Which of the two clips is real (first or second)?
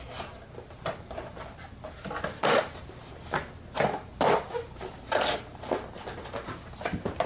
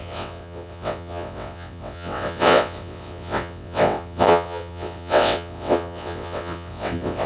first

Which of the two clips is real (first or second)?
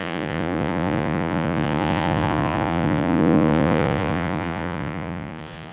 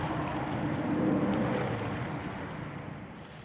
second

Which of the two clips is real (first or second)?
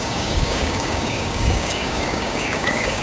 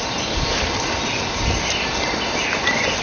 second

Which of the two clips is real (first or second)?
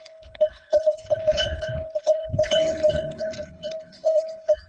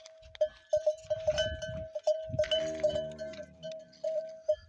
second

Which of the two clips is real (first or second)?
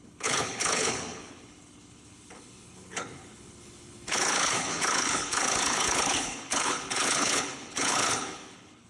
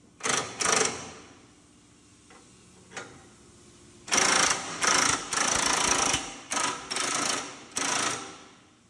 second